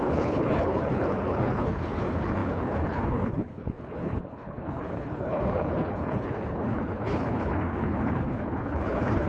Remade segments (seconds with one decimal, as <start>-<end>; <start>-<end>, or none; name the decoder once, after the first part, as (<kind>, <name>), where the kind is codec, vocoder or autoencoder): 0.0-9.3 (codec, HILCodec)